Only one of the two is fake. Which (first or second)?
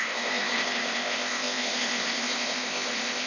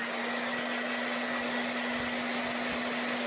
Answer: first